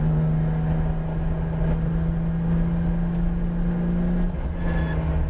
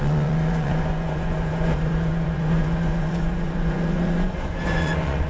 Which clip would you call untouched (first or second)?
first